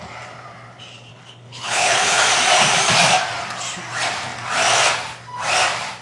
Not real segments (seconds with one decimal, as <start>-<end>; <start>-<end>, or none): 1.1-2.2